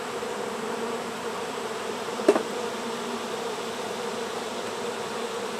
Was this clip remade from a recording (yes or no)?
yes